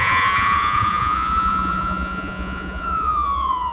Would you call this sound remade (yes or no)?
yes